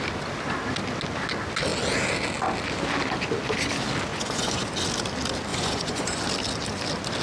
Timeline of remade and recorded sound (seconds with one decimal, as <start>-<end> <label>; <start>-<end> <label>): 0.0-4.1 recorded; 4.1-4.7 remade; 4.7-5.5 recorded; 5.5-6.2 remade; 6.2-7.2 recorded